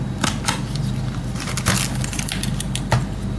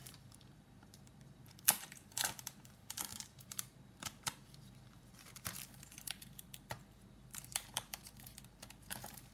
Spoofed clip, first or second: second